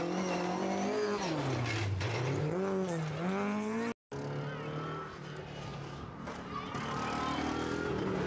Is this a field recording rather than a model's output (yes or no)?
yes